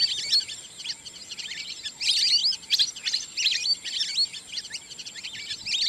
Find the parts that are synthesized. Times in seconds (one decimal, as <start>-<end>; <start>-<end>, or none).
none